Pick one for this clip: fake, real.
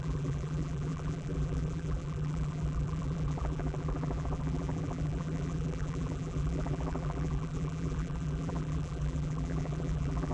fake